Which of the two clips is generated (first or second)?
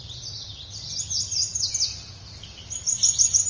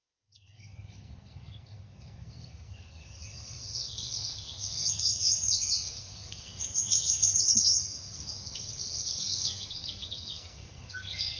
second